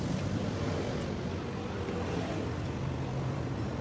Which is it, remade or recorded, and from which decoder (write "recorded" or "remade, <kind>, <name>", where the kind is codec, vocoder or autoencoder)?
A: recorded